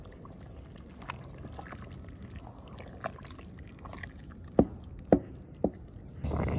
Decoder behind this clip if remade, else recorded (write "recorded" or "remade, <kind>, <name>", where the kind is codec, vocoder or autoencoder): recorded